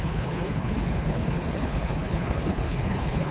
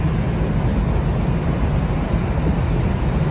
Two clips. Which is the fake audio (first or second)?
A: first